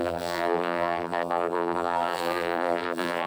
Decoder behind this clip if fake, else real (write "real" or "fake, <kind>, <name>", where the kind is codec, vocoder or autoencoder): fake, vocoder, BigVGAN v2